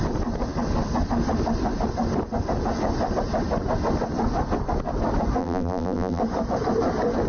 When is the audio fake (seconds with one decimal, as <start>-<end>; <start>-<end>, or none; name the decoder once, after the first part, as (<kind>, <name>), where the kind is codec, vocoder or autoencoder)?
5.4-6.2 (vocoder, BigVGAN v2)